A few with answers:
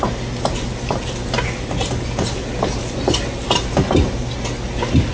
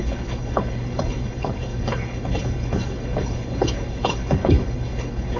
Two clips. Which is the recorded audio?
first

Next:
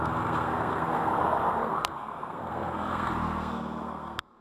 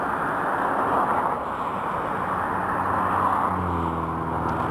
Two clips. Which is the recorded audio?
second